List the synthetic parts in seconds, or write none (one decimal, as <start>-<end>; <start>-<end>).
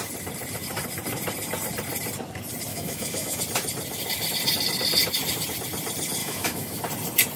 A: 2.7-3.4; 6.2-6.8